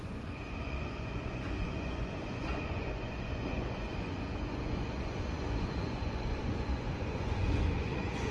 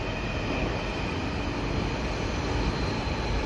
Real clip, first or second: second